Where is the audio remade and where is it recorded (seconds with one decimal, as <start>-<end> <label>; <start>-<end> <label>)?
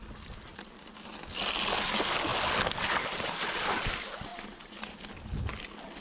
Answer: 0.0-4.3 recorded; 4.3-5.1 remade; 5.1-6.0 recorded